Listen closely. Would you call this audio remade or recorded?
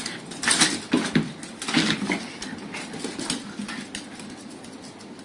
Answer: recorded